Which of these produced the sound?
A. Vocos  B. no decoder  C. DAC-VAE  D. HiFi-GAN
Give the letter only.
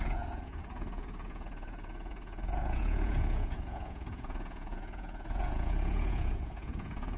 A